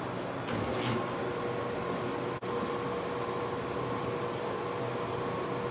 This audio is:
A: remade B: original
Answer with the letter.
B